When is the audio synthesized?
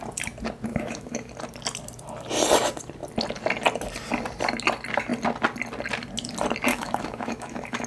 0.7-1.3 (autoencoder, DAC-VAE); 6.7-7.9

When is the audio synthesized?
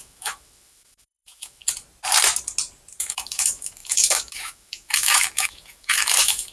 0.0-1.6 (autoencoder, DAC-VAE); 3.0-6.5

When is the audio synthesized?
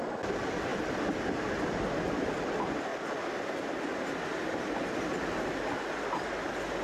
none